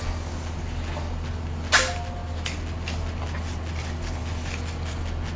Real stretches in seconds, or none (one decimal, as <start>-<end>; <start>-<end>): 0.0-5.4